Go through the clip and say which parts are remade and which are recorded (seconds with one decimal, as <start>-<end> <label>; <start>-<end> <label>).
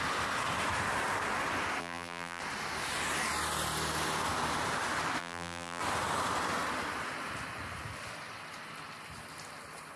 0.0-1.8 recorded; 1.8-2.4 remade; 2.4-5.2 recorded; 5.2-5.8 remade; 5.8-10.0 recorded